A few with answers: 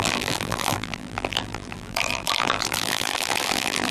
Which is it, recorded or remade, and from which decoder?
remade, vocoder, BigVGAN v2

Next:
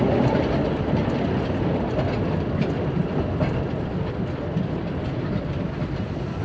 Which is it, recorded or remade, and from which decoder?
recorded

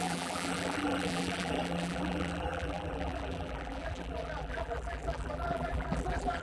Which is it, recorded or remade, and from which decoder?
remade, vocoder, BigVGAN v2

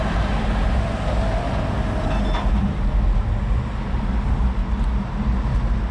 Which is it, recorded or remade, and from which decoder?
recorded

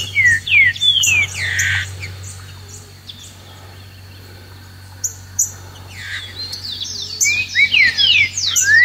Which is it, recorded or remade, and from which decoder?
remade, vocoder, BigVGAN v2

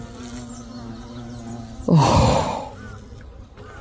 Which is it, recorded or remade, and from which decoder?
recorded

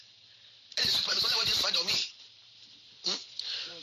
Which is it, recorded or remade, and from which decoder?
remade, vocoder, BigVGAN v2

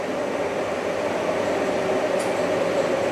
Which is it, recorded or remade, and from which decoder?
recorded